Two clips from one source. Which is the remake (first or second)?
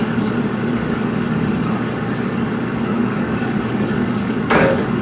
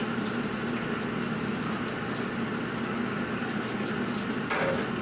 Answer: first